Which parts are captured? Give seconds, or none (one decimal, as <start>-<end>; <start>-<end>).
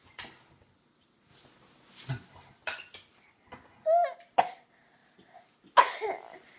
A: 0.0-6.6